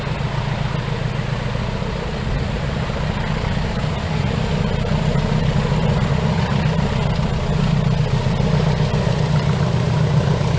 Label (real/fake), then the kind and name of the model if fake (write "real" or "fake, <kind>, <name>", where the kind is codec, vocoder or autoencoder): real